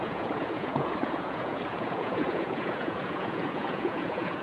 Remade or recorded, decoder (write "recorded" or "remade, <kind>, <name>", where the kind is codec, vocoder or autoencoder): remade, vocoder, Vocos